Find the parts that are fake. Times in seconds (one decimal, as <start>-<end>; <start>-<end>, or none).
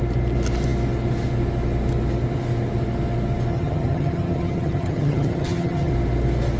3.5-5.9